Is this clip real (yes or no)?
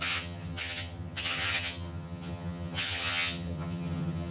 no